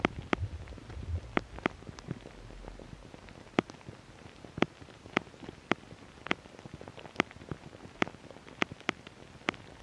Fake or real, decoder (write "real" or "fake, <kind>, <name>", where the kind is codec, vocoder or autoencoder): real